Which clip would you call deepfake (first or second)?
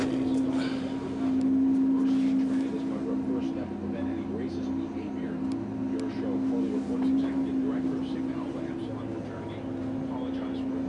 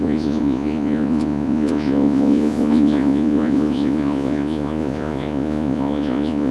second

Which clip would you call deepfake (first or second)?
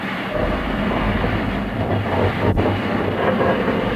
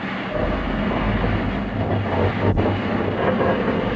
first